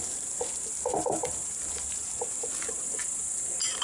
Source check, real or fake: real